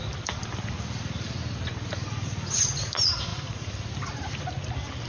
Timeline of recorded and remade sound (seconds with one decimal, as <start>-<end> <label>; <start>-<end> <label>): 0.0-5.1 remade